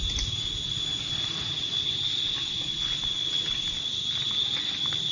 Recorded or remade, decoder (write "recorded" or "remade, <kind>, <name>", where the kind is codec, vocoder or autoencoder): recorded